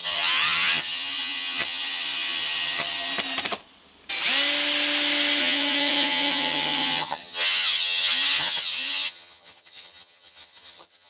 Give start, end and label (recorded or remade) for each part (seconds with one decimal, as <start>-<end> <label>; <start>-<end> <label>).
0.0-3.1 remade; 3.1-5.4 recorded; 5.4-11.1 remade